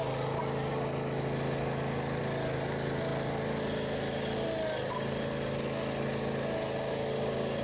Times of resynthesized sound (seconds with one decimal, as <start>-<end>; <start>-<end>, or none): none